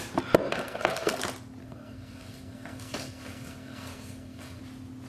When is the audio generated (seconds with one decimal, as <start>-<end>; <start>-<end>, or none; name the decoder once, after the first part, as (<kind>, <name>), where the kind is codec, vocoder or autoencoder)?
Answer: 0.4-1.2 (codec, SNAC); 1.6-4.6